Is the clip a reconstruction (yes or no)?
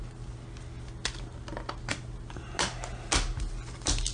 no